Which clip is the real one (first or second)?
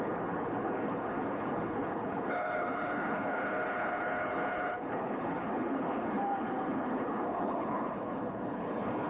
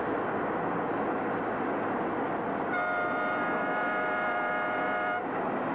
second